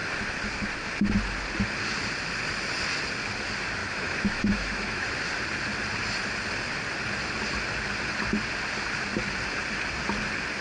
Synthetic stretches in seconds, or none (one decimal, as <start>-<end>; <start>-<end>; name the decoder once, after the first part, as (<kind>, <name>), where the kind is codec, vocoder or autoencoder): 3.8-5.1 (autoencoder, DAC-VAE)